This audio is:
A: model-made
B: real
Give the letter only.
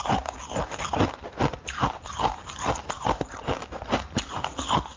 B